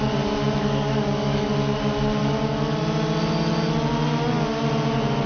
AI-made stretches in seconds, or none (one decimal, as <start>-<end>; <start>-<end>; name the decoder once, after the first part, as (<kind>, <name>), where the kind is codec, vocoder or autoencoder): 0.6-1.5 (codec, DAC); 2.2-2.8